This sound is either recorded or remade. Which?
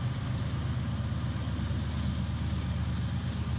recorded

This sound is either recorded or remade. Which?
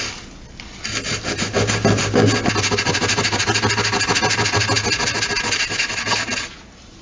recorded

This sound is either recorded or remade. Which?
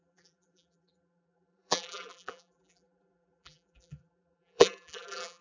remade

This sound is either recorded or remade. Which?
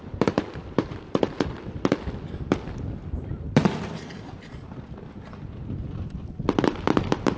remade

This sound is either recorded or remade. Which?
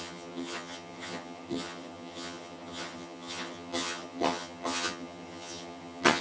remade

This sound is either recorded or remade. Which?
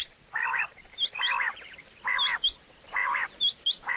remade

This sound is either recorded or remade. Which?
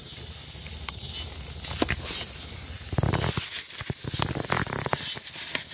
recorded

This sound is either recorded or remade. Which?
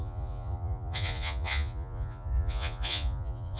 remade